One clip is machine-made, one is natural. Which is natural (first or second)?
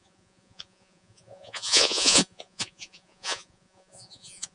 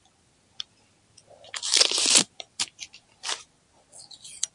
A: second